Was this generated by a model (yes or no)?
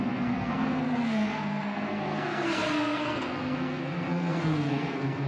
yes